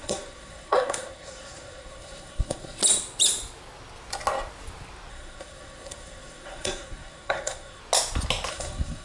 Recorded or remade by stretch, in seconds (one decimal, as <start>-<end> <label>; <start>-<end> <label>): 0.0-2.8 remade; 2.8-5.1 recorded; 5.1-7.8 remade; 7.8-8.5 recorded; 8.5-9.0 remade